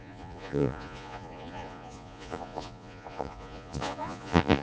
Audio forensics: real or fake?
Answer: fake